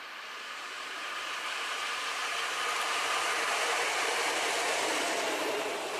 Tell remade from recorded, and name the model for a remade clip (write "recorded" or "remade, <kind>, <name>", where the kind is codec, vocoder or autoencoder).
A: remade, vocoder, BigVGAN v2